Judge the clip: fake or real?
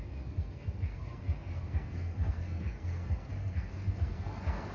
fake